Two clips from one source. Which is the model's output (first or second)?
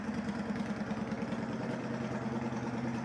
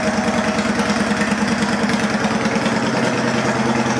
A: first